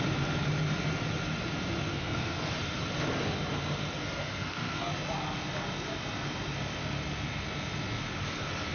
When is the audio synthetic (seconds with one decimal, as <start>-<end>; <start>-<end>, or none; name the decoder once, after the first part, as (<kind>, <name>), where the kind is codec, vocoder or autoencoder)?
1.9-2.5 (codec, SNAC); 4.2-4.9